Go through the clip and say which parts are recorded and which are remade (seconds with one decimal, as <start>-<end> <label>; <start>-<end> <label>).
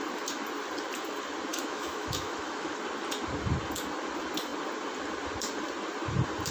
0.0-1.5 recorded; 1.5-2.8 remade; 2.8-6.5 recorded